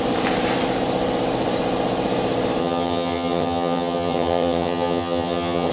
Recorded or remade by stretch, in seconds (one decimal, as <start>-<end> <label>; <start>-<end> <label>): 0.0-2.6 recorded; 2.6-5.7 remade